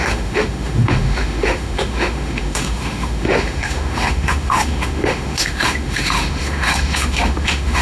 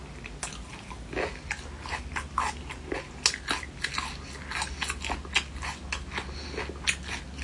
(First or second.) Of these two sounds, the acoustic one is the second